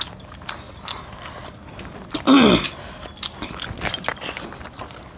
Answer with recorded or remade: recorded